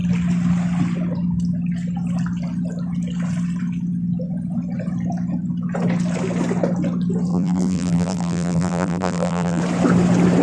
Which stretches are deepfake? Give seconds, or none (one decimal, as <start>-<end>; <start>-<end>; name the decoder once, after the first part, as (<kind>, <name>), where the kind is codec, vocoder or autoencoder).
7.3-9.6 (vocoder, BigVGAN v2)